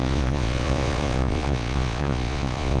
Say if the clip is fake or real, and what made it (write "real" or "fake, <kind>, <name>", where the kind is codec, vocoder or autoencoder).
fake, vocoder, Vocos